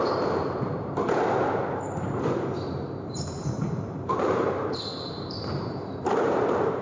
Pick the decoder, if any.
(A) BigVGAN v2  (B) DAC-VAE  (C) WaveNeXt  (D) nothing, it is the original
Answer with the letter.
A